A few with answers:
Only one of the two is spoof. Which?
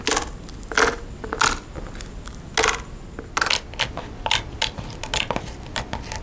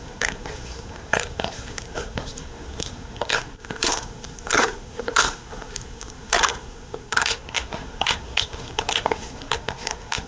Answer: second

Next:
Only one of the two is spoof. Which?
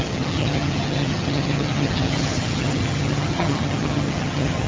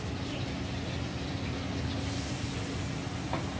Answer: first